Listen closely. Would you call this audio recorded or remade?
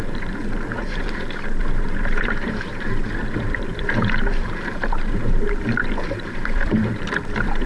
remade